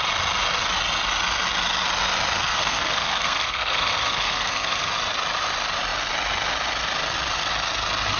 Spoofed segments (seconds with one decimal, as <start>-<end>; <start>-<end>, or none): 2.5-4.9